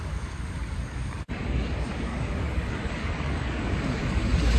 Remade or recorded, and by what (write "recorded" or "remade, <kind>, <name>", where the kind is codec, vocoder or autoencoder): remade, codec, DAC